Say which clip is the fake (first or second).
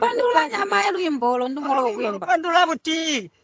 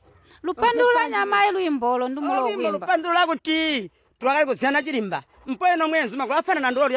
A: first